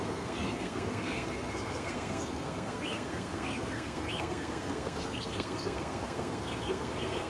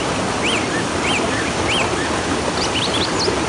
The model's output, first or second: first